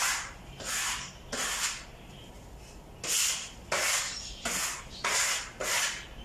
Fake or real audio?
real